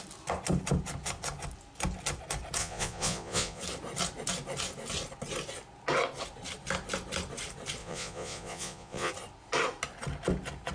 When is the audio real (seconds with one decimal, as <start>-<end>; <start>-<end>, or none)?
0.0-2.6; 3.6-7.8; 9.1-10.7